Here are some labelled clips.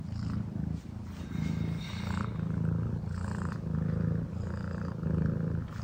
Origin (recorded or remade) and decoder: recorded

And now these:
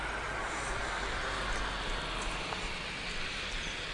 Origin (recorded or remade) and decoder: recorded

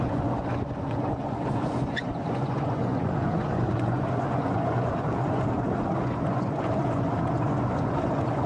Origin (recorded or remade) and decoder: remade, vocoder, Vocos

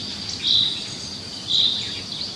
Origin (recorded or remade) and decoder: recorded